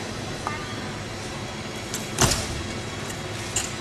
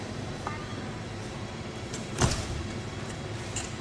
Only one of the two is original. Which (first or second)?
first